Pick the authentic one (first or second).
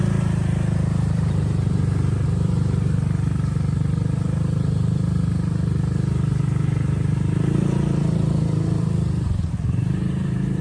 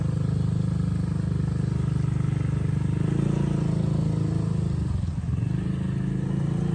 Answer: second